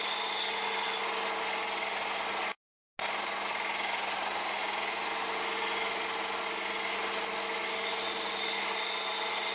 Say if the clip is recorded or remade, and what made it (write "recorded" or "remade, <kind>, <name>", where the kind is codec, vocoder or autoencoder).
recorded